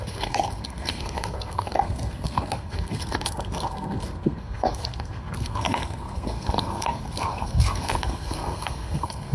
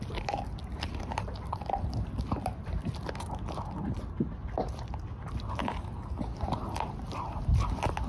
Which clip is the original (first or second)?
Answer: second